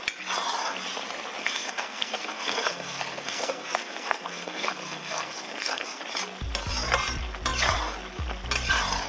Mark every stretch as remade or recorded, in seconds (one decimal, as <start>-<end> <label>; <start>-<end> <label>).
0.0-1.4 recorded; 1.4-6.0 remade; 6.0-9.1 recorded